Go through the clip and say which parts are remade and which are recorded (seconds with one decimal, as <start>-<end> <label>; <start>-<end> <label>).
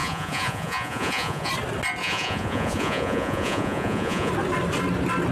0.0-1.5 remade; 1.5-2.0 recorded; 2.0-4.3 remade; 4.3-5.3 recorded